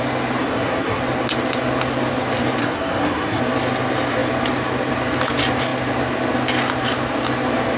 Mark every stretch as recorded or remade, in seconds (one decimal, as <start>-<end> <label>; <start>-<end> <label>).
0.0-0.4 recorded; 0.4-1.0 remade; 1.0-2.6 recorded; 2.6-3.4 remade; 3.4-7.8 recorded